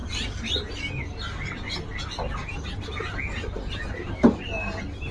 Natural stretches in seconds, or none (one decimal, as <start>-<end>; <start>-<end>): 0.0-5.1